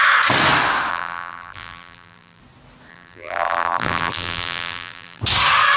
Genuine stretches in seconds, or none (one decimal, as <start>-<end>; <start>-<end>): 0.0-0.9; 2.4-2.9; 5.2-5.8